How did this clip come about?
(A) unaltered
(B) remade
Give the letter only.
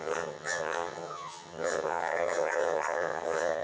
B